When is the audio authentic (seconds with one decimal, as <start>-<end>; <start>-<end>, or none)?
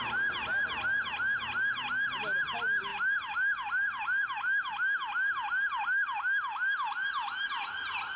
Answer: 0.0-8.2